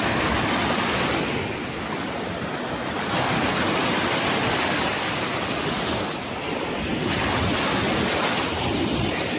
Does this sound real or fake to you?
real